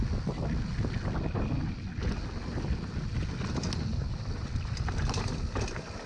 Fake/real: real